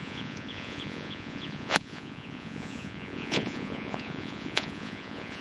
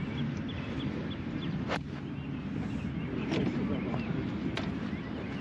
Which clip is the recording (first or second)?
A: second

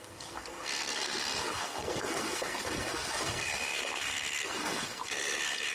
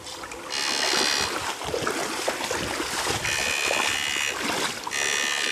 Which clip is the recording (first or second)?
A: second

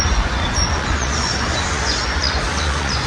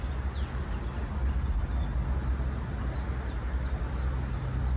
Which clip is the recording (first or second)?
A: second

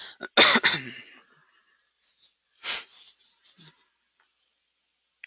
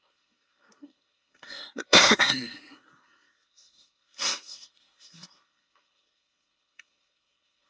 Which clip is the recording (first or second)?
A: first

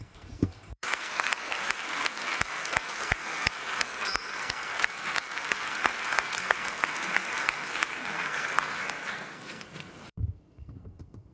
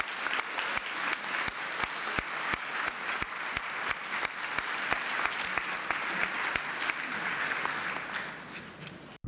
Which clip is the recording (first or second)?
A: second